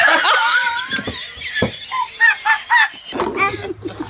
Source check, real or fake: real